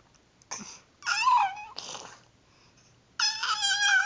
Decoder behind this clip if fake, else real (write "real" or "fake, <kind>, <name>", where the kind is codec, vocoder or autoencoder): real